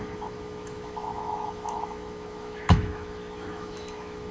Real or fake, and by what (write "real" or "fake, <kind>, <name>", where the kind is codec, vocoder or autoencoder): fake, autoencoder, DAC-VAE